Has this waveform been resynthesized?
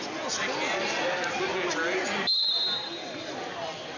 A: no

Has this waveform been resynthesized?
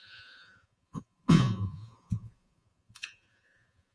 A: yes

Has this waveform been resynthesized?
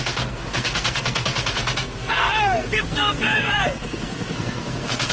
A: yes